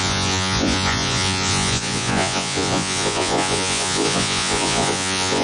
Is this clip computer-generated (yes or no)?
yes